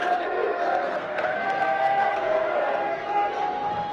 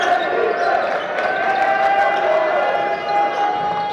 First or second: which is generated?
first